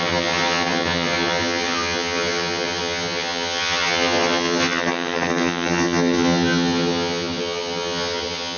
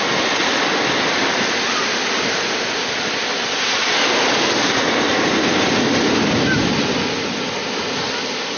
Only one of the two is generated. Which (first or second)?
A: first